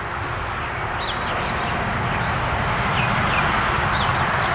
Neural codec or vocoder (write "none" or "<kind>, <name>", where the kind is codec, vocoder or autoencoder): none